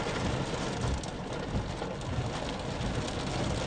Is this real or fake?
real